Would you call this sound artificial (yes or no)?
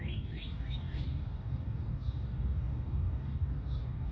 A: yes